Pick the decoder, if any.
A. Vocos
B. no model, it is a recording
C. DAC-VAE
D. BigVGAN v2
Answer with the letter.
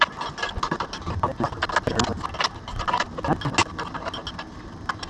B